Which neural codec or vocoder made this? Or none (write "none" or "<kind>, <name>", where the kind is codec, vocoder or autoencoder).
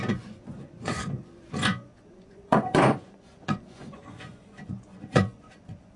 vocoder, Vocos